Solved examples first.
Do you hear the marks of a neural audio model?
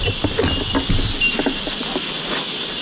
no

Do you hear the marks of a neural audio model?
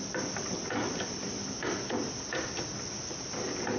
no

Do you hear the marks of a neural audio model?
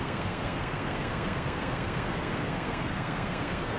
yes